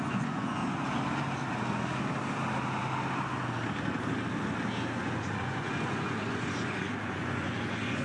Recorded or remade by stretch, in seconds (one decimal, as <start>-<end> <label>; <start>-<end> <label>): 0.0-0.6 remade; 0.6-5.0 recorded; 5.0-8.0 remade